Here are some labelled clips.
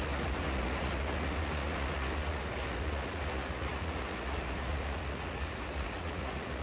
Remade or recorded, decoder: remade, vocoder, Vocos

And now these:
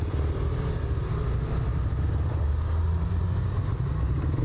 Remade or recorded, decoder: recorded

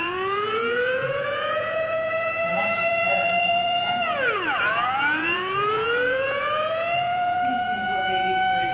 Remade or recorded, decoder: remade, vocoder, Vocos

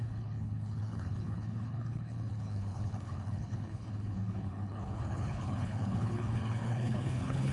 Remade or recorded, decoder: remade, codec, HILCodec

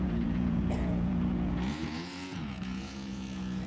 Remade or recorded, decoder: remade, vocoder, Vocos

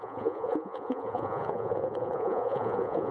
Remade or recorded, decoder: remade, vocoder, Vocos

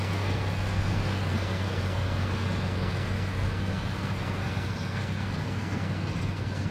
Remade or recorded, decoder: remade, codec, SNAC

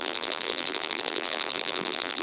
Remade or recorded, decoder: remade, vocoder, BigVGAN v2